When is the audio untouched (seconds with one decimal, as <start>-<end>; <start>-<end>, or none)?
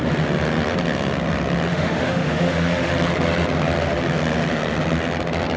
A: 0.0-1.7; 2.9-5.6